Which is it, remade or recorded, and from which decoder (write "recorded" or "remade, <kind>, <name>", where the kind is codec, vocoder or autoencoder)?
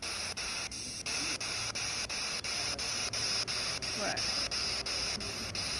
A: recorded